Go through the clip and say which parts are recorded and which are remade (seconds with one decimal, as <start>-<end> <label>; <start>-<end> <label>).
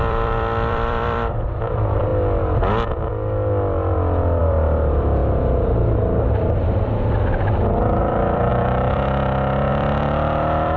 0.0-2.1 remade; 2.1-4.4 recorded; 4.4-5.2 remade; 5.2-8.0 recorded; 8.0-10.8 remade